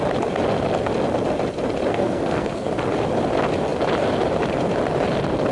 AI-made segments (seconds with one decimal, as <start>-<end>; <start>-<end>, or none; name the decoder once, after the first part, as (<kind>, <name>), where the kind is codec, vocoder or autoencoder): 1.9-2.7 (codec, SNAC)